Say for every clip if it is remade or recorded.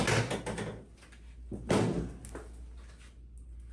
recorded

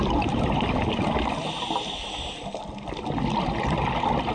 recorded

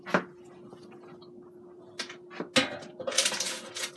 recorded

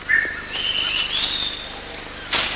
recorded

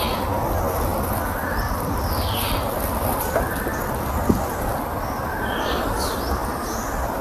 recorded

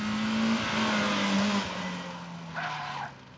recorded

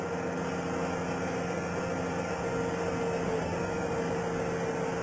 recorded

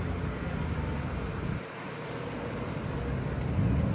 recorded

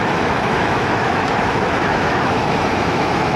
remade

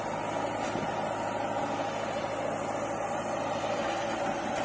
recorded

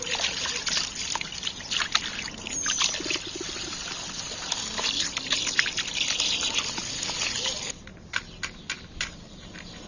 recorded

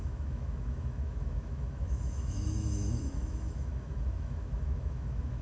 remade